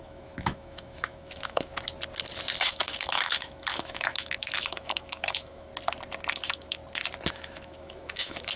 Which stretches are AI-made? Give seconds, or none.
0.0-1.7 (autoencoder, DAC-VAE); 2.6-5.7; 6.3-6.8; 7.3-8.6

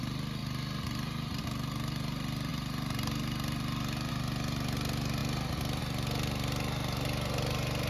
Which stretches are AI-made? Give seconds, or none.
none

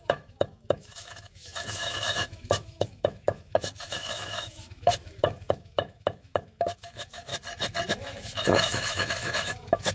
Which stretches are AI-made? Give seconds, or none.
0.0-7.3 (autoencoder, DAC-VAE); 7.9-9.9

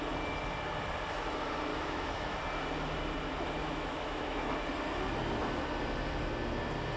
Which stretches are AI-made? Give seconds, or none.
1.7-2.4 (autoencoder, DAC-VAE); 3.6-4.5

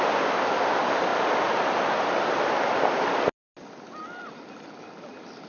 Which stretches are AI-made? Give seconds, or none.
none

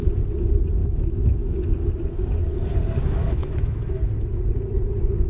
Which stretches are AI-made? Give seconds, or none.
0.8-1.6 (autoencoder, DAC-VAE); 3.0-4.0

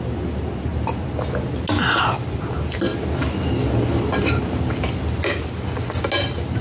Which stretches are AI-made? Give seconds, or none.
none

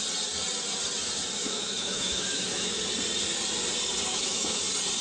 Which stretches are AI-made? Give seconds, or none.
1.4-2.8 (autoencoder, DAC-VAE); 4.1-4.6